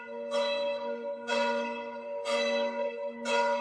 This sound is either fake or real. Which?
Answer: fake